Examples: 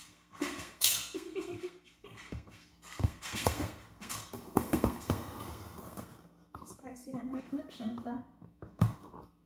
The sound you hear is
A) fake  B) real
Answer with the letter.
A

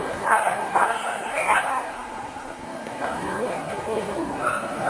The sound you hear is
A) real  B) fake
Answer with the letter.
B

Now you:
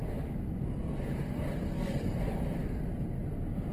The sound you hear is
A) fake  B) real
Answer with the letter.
B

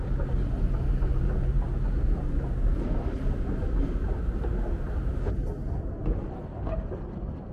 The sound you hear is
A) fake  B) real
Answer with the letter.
B